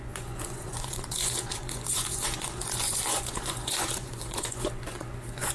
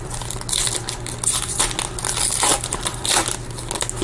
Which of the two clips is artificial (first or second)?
first